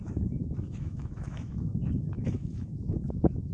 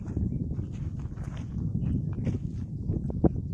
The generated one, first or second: first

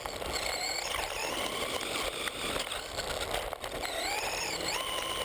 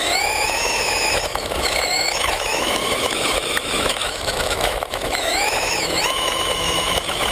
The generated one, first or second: second